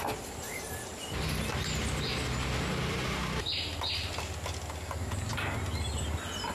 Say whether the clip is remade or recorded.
recorded